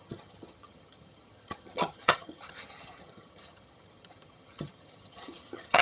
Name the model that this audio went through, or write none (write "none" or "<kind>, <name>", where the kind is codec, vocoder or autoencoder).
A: vocoder, HiFi-GAN